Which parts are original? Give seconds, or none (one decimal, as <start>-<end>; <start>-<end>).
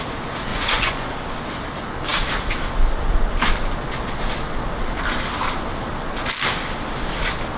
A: 0.0-0.5; 1.1-7.6